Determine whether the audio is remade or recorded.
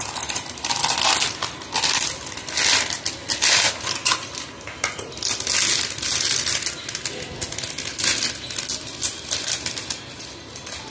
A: recorded